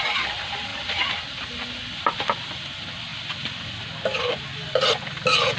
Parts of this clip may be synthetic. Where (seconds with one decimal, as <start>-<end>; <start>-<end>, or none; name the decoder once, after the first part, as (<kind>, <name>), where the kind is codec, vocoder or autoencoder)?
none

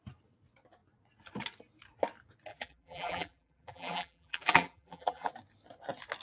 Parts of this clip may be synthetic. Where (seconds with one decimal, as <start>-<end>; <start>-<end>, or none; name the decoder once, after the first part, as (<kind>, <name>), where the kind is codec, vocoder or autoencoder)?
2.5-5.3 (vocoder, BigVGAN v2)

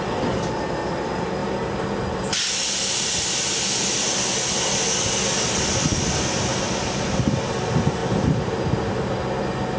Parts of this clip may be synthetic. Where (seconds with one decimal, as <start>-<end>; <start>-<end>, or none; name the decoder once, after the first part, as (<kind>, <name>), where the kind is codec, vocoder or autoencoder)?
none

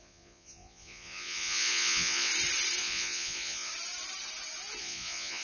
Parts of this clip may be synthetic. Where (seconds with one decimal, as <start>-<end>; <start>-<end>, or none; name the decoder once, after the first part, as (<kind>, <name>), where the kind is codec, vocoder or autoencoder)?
0.0-2.3 (vocoder, Vocos); 2.8-3.7; 4.8-5.4

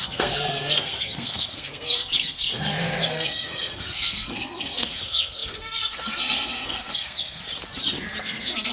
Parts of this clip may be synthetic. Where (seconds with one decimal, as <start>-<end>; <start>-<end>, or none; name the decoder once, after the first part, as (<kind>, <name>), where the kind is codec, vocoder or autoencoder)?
0.0-7.4 (codec, SNAC); 8.2-8.7